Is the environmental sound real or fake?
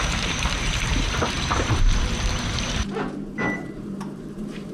fake